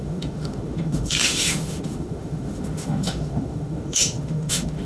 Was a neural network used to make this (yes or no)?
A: yes